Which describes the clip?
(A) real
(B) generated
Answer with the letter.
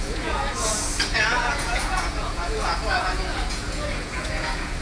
B